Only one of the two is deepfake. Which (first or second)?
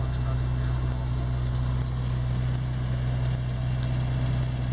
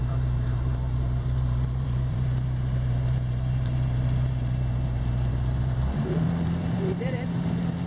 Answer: second